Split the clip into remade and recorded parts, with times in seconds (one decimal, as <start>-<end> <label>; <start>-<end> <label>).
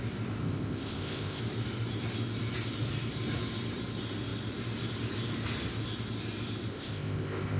0.0-0.4 recorded; 0.4-1.4 remade; 1.4-6.7 recorded; 6.7-7.6 remade